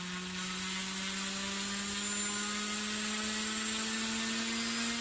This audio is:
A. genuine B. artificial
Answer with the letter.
A